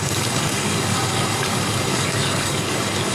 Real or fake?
fake